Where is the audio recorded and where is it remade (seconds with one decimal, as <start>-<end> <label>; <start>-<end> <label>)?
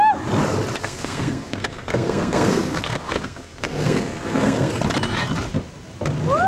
0.0-0.8 recorded; 0.8-4.7 remade; 4.7-6.5 recorded